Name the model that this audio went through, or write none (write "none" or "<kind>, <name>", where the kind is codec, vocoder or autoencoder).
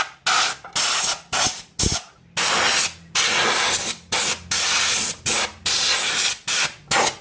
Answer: none